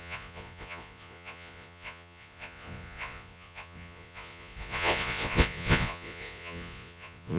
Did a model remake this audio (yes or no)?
yes